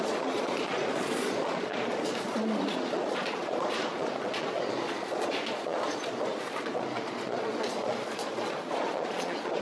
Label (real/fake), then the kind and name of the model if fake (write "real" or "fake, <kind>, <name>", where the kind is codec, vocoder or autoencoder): fake, vocoder, Vocos